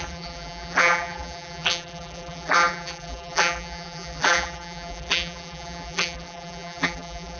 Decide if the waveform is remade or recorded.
remade